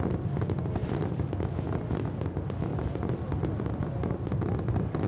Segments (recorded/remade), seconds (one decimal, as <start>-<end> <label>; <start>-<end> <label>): 0.0-0.8 recorded; 0.8-1.3 remade; 1.3-2.7 recorded; 2.7-3.7 remade; 3.7-5.1 recorded

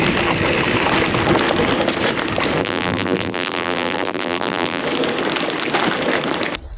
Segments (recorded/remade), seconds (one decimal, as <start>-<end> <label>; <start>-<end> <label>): 0.0-2.6 recorded; 2.6-4.8 remade; 4.8-6.8 recorded

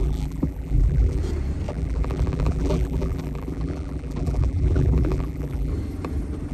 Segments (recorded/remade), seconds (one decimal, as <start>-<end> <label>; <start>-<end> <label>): 0.0-1.2 remade; 1.2-1.7 recorded; 1.7-5.7 remade; 5.7-6.5 recorded

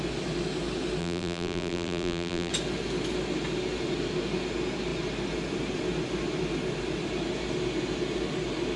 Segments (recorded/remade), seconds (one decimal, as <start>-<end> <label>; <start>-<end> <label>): 0.0-1.0 recorded; 1.0-2.5 remade; 2.5-8.8 recorded

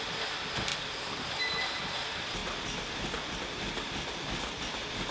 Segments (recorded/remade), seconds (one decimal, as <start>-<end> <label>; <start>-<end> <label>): 0.0-0.7 recorded; 0.7-1.6 remade; 1.6-2.4 recorded; 2.4-3.4 remade; 3.4-5.1 recorded